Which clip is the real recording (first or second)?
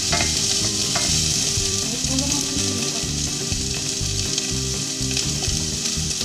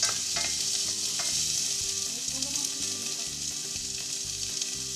second